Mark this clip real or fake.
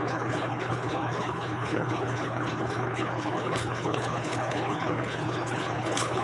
fake